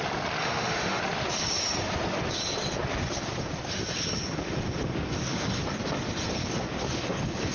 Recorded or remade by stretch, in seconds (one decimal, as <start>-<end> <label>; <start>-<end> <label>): 0.0-0.4 recorded; 0.4-1.0 remade; 1.0-7.5 recorded